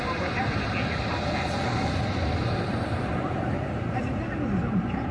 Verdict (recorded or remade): recorded